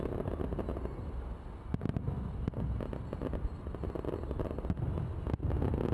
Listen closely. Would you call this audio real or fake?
real